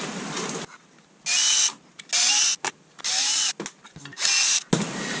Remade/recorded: recorded